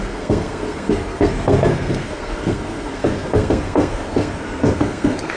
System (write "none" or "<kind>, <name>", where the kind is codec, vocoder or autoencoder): codec, SNAC